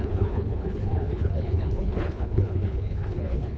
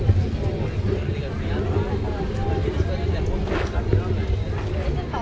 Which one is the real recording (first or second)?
second